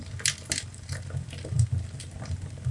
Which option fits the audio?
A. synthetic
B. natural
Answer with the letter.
B